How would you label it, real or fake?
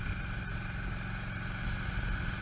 real